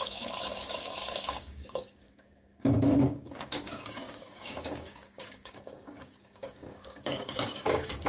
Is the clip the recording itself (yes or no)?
no